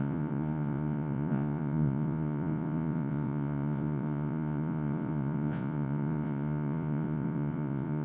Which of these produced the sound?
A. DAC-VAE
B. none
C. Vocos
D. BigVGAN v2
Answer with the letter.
C